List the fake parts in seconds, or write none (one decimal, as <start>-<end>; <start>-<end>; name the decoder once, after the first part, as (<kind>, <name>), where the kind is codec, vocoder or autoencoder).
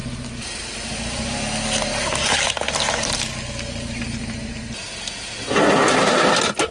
none